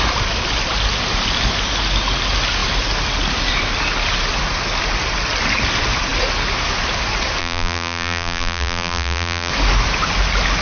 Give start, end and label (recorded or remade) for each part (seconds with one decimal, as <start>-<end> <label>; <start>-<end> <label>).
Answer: 0.0-7.4 recorded; 7.4-9.5 remade; 9.5-10.6 recorded